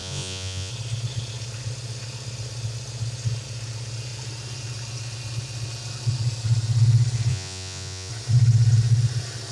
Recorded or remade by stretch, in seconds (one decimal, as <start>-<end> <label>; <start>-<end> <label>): 0.0-0.7 remade; 0.7-7.3 recorded; 7.3-8.1 remade; 8.1-9.5 recorded